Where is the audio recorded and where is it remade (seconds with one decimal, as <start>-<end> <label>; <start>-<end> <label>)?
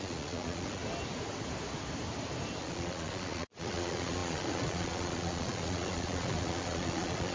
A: 0.0-0.8 remade; 0.8-2.6 recorded; 2.6-7.3 remade